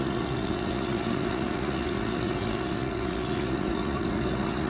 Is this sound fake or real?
fake